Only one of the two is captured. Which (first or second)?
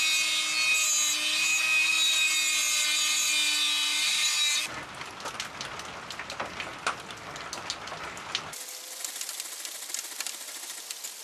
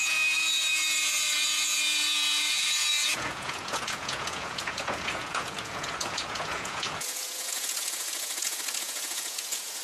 first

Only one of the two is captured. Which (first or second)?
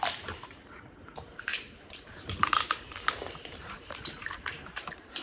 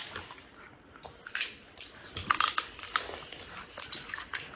second